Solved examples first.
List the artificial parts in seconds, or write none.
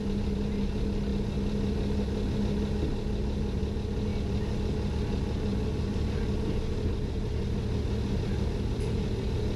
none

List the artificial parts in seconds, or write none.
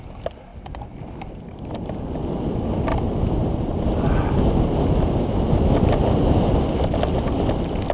2.9-3.7 (vocoder, BigVGAN v2)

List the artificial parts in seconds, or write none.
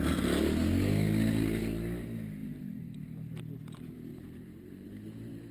2.4-3.4 (vocoder, BigVGAN v2); 4.1-5.5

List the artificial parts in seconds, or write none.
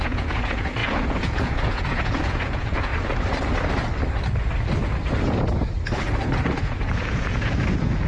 0.0-2.9 (vocoder, Vocos); 6.6-8.1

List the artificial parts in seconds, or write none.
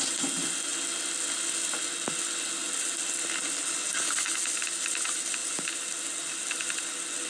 none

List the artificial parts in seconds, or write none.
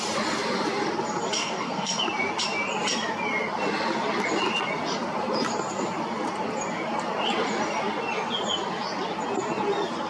1.4-2.0 (codec, SNAC)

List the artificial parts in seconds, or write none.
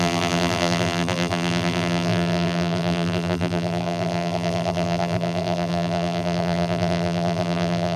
0.0-8.0 (vocoder, BigVGAN v2)